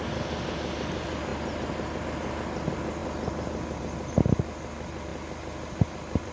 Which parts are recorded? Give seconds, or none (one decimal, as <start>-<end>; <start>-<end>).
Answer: 0.0-6.3